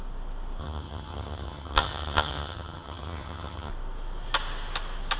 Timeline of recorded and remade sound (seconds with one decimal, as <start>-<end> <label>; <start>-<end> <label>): 0.0-0.6 recorded; 0.6-3.7 remade; 3.7-5.2 recorded